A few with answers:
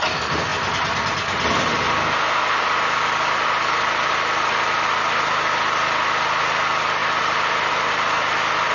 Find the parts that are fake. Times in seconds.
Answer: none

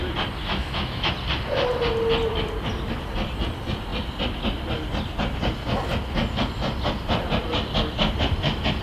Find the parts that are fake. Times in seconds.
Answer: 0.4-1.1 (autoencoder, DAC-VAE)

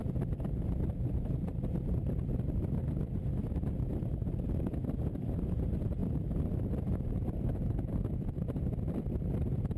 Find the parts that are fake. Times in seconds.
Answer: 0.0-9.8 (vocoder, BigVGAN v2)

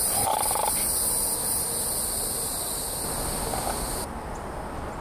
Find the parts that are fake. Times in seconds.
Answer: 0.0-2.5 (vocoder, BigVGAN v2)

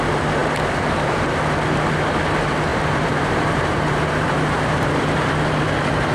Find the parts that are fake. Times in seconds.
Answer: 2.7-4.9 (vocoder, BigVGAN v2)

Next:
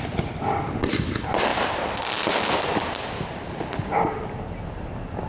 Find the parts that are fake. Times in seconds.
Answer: none